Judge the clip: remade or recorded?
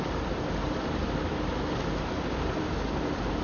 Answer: remade